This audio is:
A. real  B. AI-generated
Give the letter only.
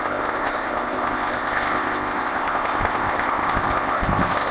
B